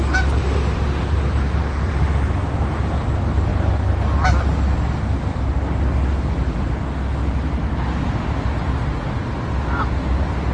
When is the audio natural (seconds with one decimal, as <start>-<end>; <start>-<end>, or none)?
0.0-10.5